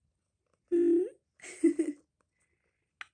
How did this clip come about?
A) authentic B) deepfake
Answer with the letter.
A